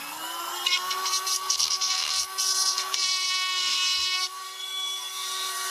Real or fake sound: fake